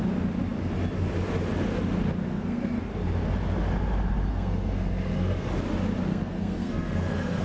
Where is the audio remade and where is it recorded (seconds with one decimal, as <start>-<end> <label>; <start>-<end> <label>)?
0.0-2.2 recorded; 2.2-2.8 remade; 2.8-4.3 recorded; 4.3-5.5 remade; 5.5-6.1 recorded; 6.1-7.4 remade